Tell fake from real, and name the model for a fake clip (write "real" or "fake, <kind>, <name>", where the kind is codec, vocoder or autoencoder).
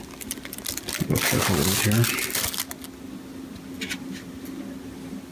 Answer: real